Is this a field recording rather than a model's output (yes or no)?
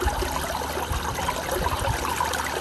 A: yes